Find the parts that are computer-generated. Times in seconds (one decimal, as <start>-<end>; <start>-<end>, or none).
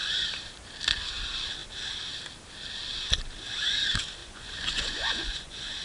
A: 4.2-5.8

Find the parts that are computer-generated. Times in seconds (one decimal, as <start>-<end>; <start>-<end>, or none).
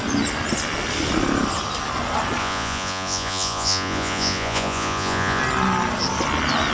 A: 2.4-5.4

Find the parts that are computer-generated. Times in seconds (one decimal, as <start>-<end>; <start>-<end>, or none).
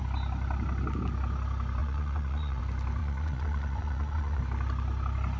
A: 1.8-2.6; 3.0-4.4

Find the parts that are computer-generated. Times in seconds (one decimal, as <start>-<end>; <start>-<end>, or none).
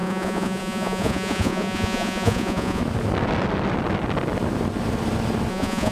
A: 0.0-2.8; 5.5-5.9